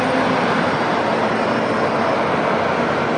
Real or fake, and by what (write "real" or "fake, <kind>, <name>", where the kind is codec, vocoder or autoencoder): real